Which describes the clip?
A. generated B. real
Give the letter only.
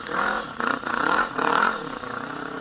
A